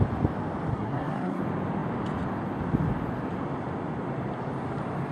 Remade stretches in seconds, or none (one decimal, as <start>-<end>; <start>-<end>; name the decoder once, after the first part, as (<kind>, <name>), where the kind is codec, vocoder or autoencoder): 0.7-1.4 (codec, SNAC)